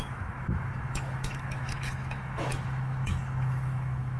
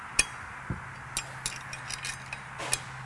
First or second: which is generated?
first